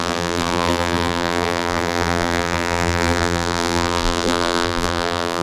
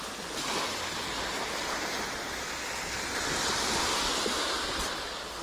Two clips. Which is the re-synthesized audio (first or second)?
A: first